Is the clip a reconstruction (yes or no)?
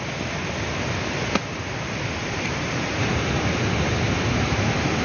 no